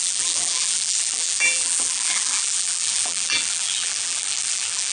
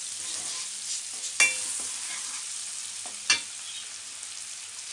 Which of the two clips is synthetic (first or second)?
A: first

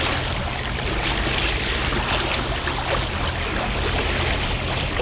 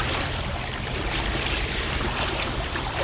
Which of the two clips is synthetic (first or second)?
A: second